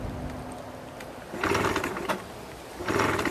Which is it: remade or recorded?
recorded